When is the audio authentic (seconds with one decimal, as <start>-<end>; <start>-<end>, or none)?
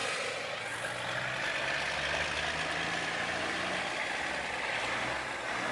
0.0-5.7